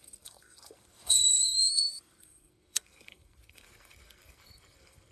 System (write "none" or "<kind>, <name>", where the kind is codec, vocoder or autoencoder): codec, SNAC